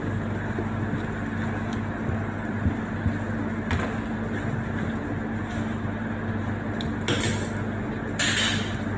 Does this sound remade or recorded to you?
recorded